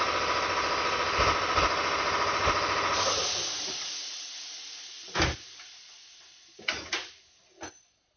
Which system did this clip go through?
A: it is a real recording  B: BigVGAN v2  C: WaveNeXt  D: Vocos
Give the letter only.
A